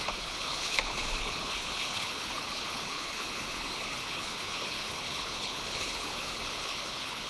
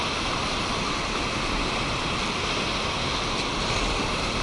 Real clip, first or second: second